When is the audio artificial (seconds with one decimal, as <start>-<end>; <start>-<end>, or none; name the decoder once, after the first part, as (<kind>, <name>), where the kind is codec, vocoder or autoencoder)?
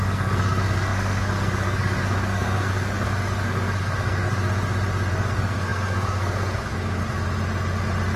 0.0-4.3 (codec, SNAC); 5.1-7.0